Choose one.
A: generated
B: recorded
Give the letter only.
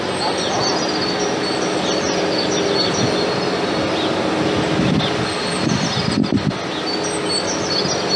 B